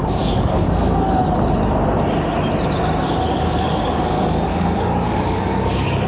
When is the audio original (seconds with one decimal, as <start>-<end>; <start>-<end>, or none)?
1.2-3.3